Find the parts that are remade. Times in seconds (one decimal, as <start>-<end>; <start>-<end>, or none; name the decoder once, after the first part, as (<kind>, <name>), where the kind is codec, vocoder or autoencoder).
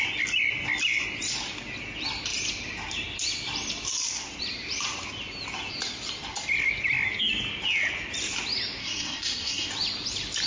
8.8-9.7 (codec, SNAC)